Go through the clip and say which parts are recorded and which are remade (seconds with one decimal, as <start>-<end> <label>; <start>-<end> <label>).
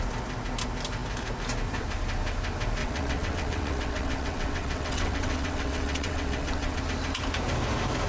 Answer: 0.0-2.8 recorded; 2.8-6.8 remade; 6.8-8.1 recorded